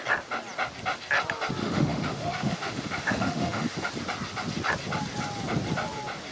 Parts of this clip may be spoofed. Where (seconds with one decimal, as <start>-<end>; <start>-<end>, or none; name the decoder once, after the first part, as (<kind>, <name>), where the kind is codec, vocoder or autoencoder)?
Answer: 1.6-3.9 (autoencoder, DAC-VAE)